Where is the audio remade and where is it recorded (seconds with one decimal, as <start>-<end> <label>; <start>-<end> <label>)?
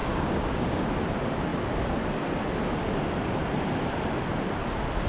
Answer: 0.0-0.9 remade; 0.9-5.1 recorded